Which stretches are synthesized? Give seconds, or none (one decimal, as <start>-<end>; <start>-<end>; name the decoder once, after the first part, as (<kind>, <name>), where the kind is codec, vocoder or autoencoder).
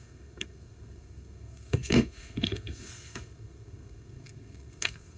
0.0-5.2 (codec, SNAC)